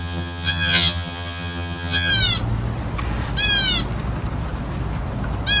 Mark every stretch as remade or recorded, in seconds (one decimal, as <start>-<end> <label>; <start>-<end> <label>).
0.0-2.1 remade; 2.1-5.6 recorded